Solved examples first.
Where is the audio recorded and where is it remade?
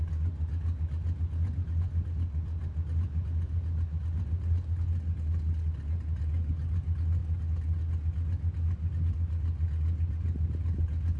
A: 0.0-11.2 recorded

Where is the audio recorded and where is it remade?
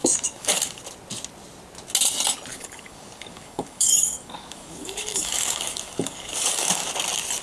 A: 0.0-0.8 remade; 0.8-2.5 recorded; 2.5-6.9 remade; 6.9-7.4 recorded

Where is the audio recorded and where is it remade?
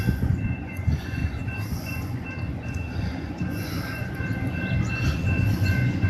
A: 0.0-6.1 remade